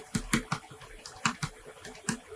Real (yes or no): yes